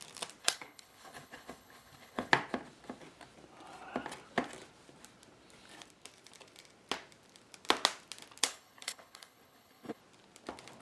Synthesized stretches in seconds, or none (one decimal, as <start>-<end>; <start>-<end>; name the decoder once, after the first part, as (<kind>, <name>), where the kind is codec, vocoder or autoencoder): 0.4-2.3 (codec, HILCodec); 8.4-10.0